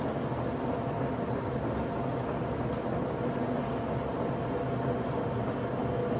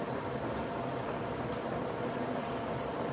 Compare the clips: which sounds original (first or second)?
first